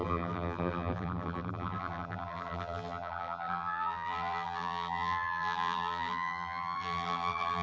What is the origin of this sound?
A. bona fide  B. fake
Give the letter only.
B